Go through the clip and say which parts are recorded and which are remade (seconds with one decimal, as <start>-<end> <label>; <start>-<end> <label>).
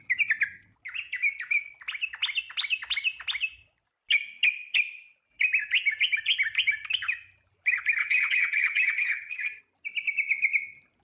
0.0-8.0 recorded; 8.0-9.6 remade; 9.6-11.0 recorded